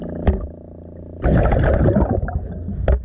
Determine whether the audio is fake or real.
real